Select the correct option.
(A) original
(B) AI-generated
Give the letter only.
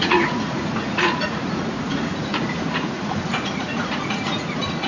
B